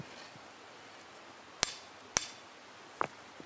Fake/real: real